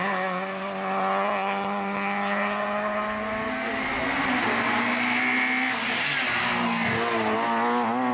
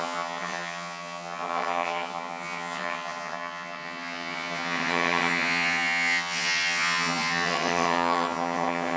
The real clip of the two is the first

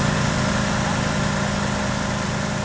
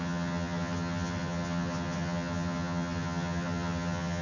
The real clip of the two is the first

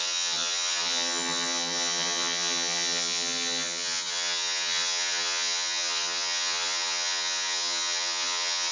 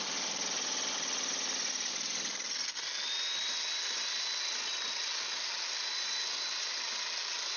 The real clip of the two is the second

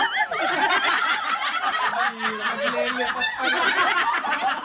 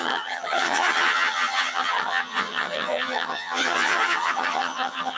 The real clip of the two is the first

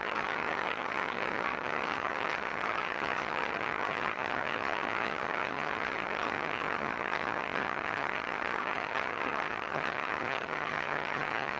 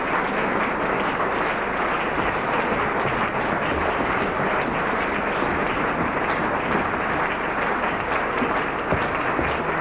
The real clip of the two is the second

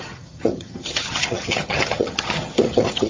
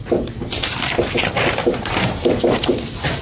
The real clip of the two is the second